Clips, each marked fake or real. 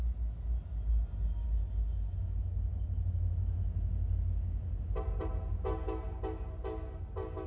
real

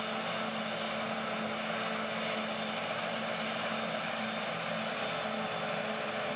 real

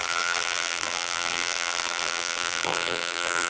fake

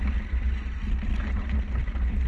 real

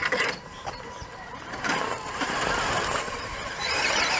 fake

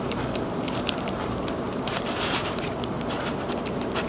fake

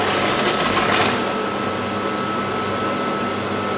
real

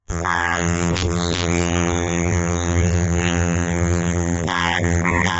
fake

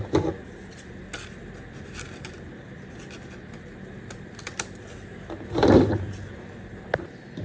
real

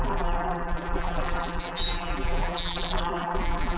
fake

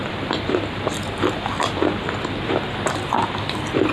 real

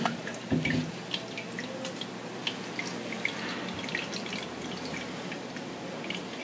real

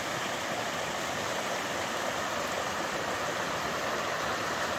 real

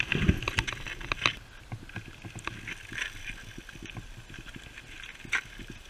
real